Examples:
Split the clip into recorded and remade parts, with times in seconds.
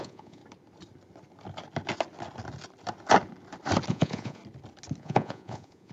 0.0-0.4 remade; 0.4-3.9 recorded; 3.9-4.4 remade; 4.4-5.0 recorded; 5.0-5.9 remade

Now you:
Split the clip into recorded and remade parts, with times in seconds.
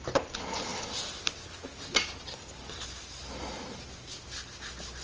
0.0-5.0 recorded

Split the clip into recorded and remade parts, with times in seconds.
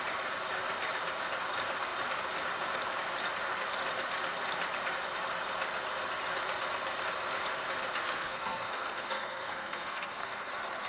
0.0-8.0 recorded; 8.0-10.5 remade; 10.5-10.9 recorded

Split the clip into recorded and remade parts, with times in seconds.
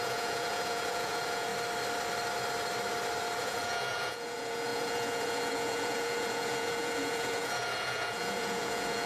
0.0-1.5 remade; 1.5-3.4 recorded; 3.4-9.1 remade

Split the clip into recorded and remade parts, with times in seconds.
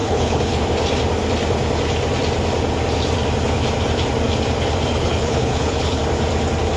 0.0-0.6 remade; 0.6-4.9 recorded; 4.9-6.0 remade; 6.0-6.8 recorded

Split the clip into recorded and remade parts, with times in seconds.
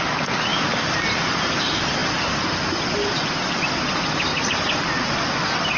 0.0-0.5 remade; 0.5-1.2 recorded; 1.2-4.3 remade; 4.3-5.2 recorded; 5.2-5.8 remade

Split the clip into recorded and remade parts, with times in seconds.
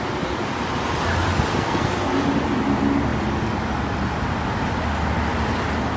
0.0-1.5 recorded; 1.5-2.1 remade; 2.1-6.0 recorded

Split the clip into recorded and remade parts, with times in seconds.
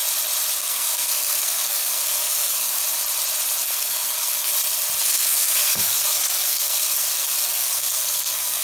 0.0-0.6 recorded; 0.6-2.8 remade; 2.8-3.6 recorded; 3.6-4.5 remade; 4.5-5.0 recorded; 5.0-8.6 remade